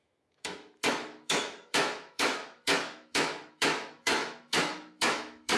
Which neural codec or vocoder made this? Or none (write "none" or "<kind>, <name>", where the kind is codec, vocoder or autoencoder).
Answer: autoencoder, DAC-VAE